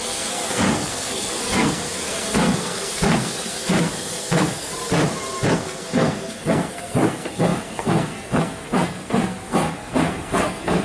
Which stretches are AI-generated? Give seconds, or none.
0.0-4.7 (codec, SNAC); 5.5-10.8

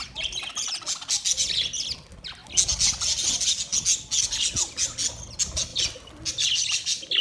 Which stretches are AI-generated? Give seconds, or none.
none

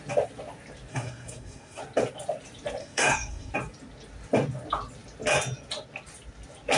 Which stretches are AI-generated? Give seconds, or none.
0.9-1.8 (codec, SNAC); 2.8-3.5

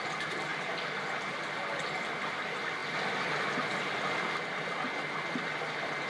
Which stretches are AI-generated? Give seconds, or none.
none